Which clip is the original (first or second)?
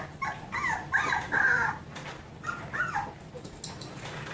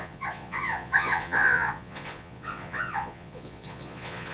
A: first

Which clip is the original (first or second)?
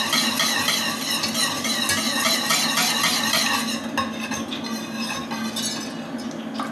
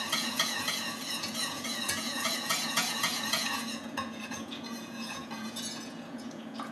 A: first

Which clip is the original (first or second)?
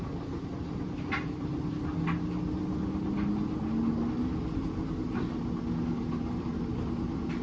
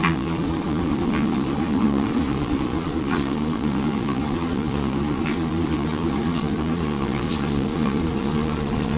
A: first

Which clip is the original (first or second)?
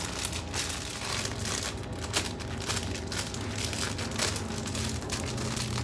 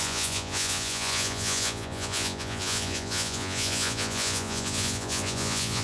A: first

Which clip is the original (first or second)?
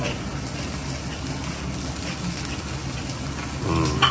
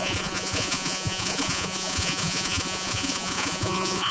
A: first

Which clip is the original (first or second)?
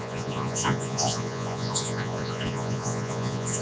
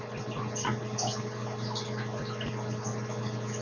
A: second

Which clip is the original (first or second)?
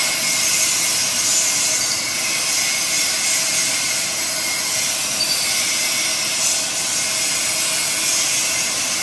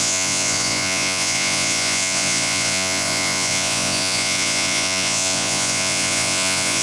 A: first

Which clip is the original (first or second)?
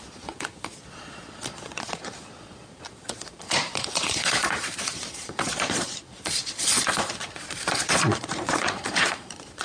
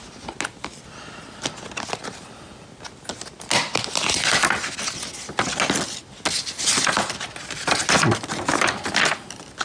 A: second